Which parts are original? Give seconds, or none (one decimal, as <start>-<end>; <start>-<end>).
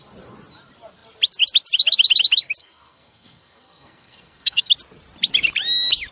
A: 0.0-2.6; 4.7-6.1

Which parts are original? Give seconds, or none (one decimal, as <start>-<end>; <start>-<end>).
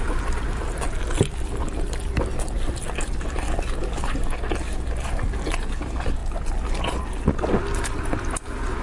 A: 0.0-8.8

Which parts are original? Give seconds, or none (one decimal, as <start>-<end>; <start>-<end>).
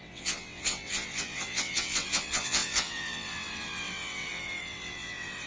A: none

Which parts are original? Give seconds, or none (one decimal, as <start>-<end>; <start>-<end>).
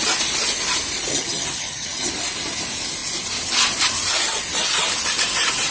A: 0.0-1.1; 2.1-5.7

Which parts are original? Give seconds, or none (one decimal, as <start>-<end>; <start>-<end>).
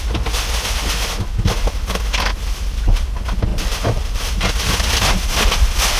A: 0.0-3.5; 4.4-6.0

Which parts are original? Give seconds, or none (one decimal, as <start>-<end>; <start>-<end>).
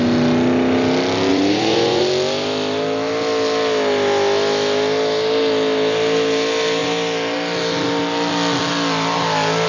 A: 0.0-1.3; 2.0-9.7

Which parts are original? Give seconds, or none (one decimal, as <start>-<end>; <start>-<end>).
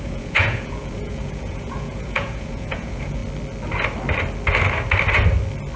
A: 3.2-5.8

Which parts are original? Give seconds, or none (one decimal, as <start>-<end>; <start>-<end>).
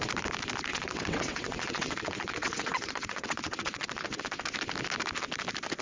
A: 0.0-0.7; 4.2-5.8